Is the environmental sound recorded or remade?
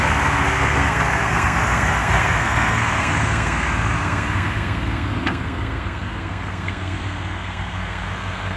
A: remade